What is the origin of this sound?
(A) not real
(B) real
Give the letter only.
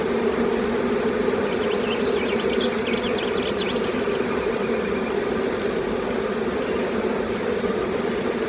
B